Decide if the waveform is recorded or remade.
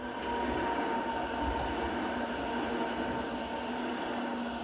recorded